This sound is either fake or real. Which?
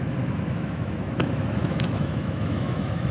fake